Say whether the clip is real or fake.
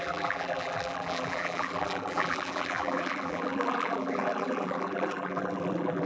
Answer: fake